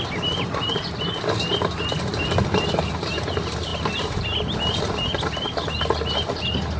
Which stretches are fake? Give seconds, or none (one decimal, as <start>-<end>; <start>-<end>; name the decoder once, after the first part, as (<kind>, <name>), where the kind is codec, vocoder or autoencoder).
none